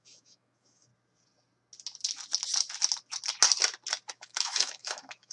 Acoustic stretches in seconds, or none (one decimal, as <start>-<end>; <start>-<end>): 0.9-4.1

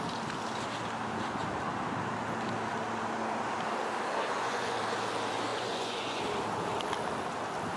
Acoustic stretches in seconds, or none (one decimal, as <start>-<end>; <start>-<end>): 0.0-4.2; 4.8-5.5; 6.2-7.8

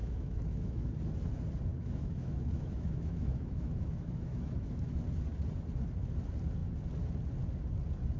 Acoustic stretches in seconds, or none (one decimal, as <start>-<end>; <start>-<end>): 0.9-1.7; 5.0-8.2

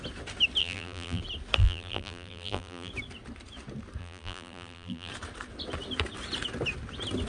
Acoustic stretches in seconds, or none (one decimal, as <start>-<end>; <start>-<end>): 0.0-0.6; 1.2-1.6; 2.9-4.0; 5.1-7.3

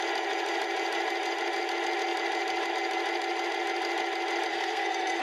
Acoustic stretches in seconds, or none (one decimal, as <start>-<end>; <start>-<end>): 0.0-4.5